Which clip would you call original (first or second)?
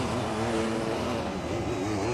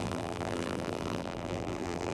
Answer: first